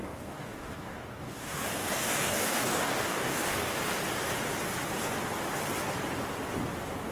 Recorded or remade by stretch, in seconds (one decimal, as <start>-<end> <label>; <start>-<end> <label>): 0.0-3.8 remade; 3.8-7.1 recorded